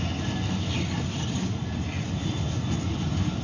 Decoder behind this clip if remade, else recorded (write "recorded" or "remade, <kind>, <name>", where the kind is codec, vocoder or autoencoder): recorded